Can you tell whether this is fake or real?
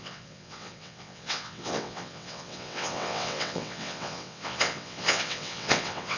fake